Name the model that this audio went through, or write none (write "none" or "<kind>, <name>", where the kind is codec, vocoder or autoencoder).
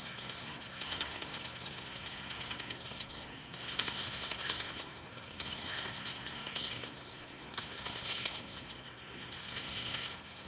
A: codec, SNAC